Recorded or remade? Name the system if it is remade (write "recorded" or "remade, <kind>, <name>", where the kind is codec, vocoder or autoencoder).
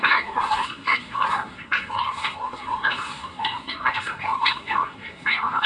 remade, codec, SNAC